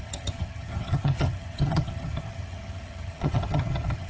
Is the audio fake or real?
fake